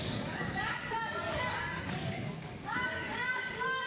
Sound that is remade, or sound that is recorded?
remade